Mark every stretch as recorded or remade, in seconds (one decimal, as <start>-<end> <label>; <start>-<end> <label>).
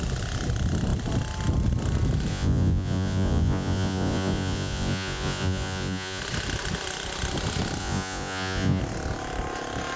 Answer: 0.0-2.3 recorded; 2.3-6.2 remade; 6.2-7.8 recorded; 7.8-8.8 remade; 8.8-10.0 recorded